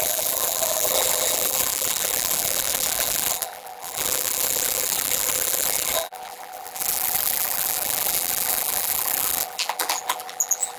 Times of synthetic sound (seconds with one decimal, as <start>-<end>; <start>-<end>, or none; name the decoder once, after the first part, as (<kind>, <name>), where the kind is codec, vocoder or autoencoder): 0.0-10.8 (vocoder, BigVGAN v2)